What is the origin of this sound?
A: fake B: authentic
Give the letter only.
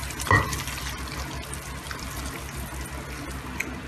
B